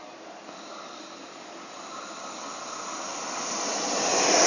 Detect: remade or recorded recorded